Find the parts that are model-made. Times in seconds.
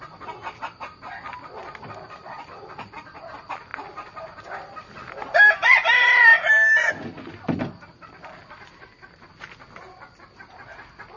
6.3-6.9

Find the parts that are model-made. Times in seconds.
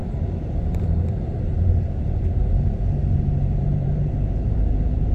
0.0-5.1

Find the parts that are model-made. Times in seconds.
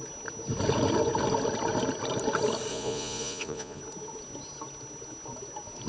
2.7-3.8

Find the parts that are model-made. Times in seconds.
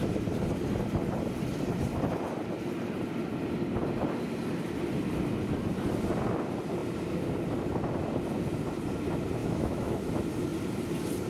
9.4-10.0